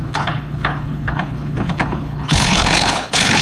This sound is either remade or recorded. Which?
remade